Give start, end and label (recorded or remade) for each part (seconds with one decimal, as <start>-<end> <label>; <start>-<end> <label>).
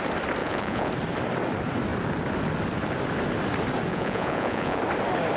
0.0-0.4 recorded; 0.4-0.9 remade; 0.9-3.9 recorded; 3.9-4.8 remade; 4.8-5.4 recorded